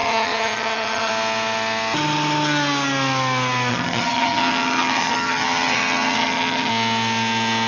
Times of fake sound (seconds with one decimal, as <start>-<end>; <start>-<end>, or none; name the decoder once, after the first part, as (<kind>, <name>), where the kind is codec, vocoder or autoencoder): 0.0-1.1 (vocoder, HiFi-GAN); 3.7-6.7